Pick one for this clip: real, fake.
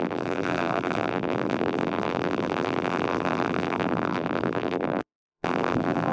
fake